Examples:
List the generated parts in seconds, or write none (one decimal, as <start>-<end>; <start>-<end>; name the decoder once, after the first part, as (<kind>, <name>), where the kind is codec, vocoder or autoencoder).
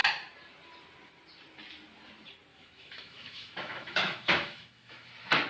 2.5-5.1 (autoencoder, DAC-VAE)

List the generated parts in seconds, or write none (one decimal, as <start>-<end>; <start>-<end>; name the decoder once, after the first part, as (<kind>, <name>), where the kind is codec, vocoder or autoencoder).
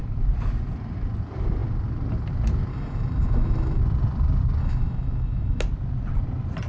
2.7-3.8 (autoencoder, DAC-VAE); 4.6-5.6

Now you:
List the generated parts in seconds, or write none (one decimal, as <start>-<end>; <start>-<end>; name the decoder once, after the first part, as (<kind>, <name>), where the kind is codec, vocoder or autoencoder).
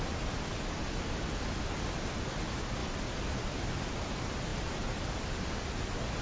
none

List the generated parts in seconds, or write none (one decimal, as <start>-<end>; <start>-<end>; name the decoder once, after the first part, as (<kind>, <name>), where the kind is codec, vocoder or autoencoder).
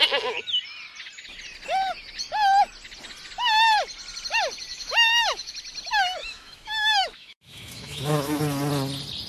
4.7-5.5 (autoencoder, DAC-VAE); 6.2-8.4